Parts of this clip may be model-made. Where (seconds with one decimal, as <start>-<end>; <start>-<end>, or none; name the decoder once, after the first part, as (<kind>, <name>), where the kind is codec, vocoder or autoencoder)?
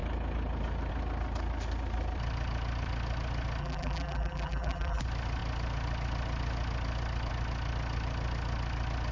3.6-5.0 (vocoder, BigVGAN v2)